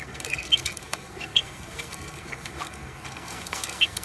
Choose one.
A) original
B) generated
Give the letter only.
B